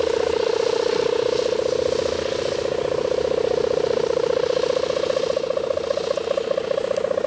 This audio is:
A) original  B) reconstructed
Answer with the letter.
A